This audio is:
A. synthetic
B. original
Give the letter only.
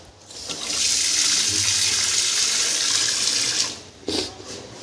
B